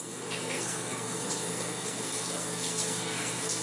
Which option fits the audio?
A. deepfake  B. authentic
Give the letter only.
A